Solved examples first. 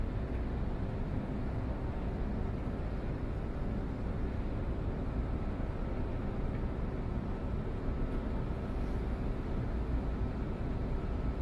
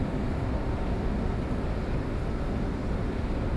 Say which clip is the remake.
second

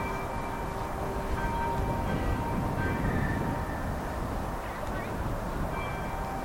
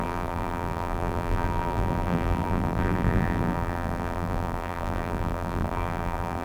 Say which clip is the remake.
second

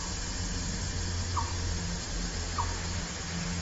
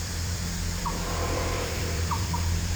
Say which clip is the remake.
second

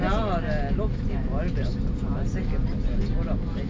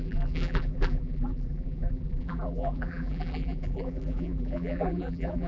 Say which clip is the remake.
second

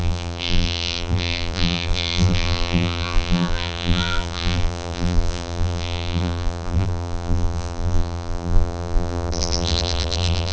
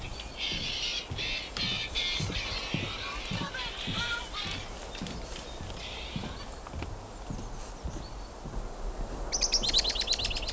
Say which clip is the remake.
first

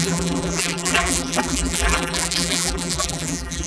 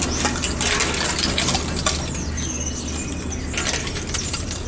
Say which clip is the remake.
first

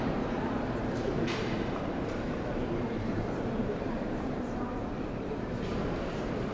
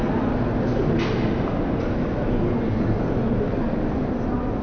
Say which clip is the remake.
first